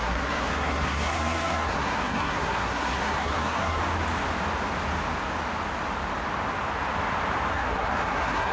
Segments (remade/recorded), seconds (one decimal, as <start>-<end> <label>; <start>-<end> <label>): 0.0-3.8 remade; 3.8-7.5 recorded; 7.5-8.5 remade